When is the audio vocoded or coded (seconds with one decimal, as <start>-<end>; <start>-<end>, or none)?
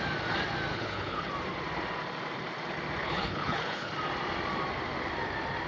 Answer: 0.7-1.3; 3.0-3.9